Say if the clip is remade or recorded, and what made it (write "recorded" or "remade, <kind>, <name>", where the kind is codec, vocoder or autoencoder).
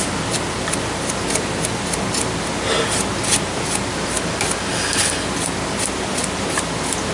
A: recorded